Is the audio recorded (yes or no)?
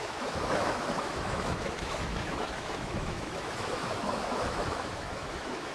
no